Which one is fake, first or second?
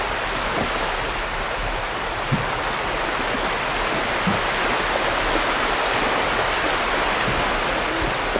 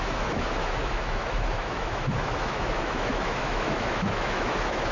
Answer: second